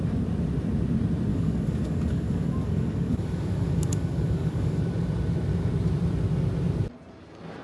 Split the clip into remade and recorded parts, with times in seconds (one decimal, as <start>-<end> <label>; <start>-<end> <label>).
0.0-1.3 recorded; 1.3-4.8 remade; 4.8-7.6 recorded